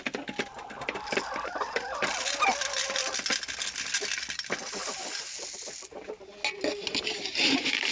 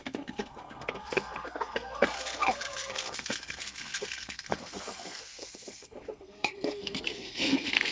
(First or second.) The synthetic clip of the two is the second